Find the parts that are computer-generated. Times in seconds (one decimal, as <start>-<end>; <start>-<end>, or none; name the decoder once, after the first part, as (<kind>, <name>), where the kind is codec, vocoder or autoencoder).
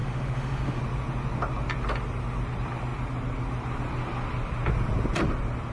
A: 0.0-0.8 (autoencoder, DAC-VAE)